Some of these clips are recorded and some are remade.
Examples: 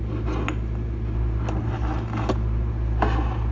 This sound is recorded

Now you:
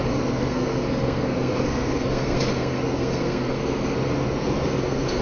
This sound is remade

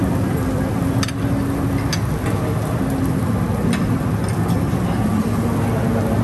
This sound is recorded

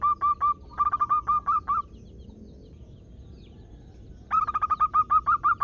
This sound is recorded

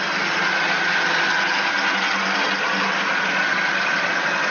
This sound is recorded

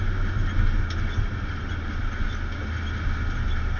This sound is recorded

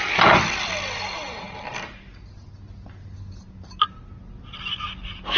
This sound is recorded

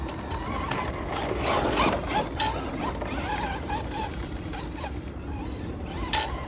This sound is recorded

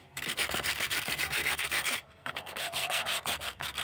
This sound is remade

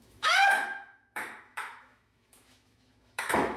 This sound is remade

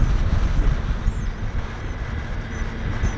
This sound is recorded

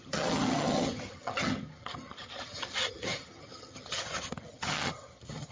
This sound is remade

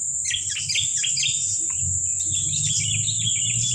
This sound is recorded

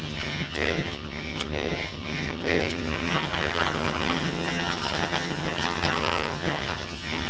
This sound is remade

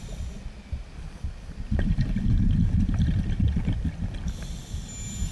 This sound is recorded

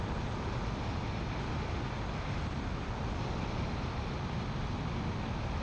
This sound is recorded